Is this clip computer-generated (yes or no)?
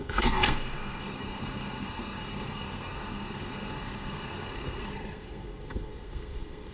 yes